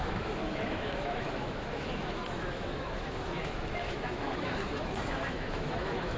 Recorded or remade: remade